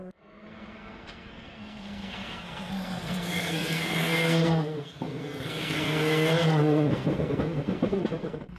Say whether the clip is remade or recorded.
remade